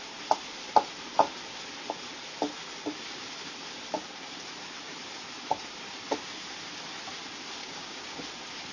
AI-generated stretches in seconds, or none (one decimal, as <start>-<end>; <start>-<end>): 7.6-8.2